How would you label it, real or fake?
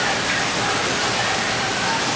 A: real